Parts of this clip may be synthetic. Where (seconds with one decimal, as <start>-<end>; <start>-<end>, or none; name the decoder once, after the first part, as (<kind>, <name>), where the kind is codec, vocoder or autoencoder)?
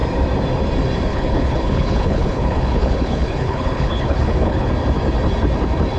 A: 1.1-4.7 (codec, HILCodec)